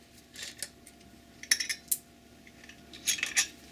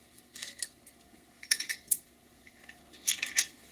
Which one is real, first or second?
first